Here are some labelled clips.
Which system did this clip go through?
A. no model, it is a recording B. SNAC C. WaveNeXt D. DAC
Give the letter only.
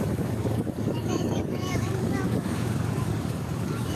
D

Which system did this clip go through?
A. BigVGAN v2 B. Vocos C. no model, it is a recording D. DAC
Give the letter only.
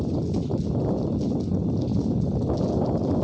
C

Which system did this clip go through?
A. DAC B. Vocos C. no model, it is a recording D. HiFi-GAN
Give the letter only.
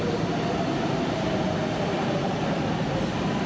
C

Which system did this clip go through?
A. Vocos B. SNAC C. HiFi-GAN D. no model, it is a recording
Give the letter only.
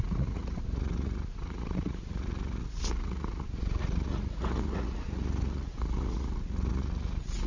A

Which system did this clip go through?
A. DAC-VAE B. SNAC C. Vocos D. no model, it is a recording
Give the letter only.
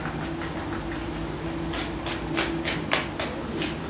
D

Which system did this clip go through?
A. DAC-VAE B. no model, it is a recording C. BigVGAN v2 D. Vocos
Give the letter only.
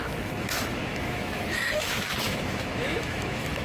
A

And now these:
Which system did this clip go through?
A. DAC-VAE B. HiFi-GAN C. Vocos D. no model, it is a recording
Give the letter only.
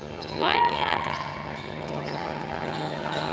B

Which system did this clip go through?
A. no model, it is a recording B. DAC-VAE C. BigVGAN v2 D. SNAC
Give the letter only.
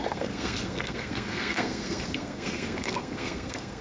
D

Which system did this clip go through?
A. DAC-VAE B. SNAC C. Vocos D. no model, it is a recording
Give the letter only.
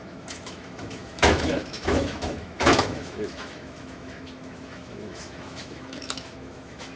A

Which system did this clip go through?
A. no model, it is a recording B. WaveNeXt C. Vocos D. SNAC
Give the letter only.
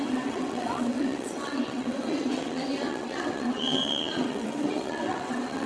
B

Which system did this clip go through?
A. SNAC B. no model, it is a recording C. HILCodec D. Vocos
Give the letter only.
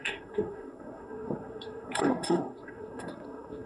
A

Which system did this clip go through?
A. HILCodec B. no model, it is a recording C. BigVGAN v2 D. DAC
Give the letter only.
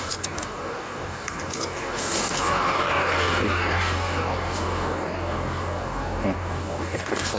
D